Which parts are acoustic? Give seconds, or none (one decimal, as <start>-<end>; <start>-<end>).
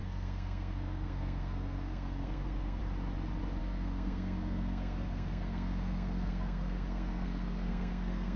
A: 2.8-3.6